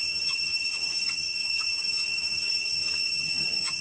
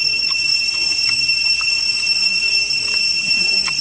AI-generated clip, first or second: first